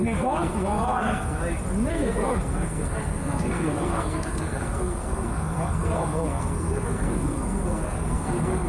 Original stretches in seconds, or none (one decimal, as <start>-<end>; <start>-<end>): 1.4-1.9